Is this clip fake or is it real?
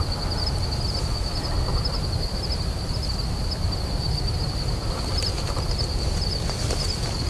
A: real